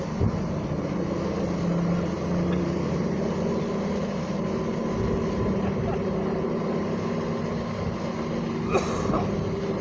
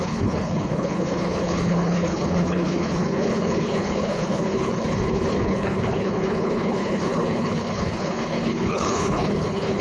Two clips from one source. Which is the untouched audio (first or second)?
first